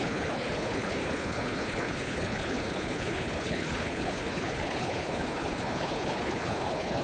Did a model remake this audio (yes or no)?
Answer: yes